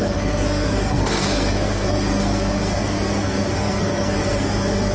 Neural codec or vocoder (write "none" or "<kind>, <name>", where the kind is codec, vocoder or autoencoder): codec, SNAC